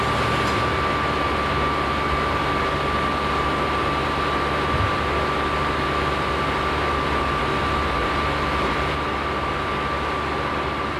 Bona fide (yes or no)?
yes